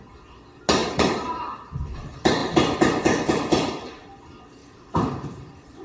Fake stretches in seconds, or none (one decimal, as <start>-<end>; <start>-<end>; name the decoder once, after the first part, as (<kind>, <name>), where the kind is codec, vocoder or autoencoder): 0.8-1.4 (vocoder, BigVGAN v2); 4.6-5.8